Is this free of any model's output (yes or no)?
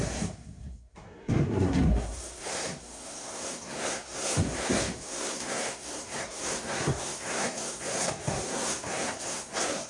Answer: no